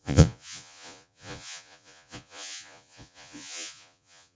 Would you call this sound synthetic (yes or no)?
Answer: yes